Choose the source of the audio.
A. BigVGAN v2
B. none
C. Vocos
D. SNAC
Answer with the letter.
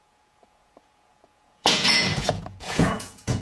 C